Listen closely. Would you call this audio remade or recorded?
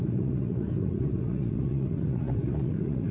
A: remade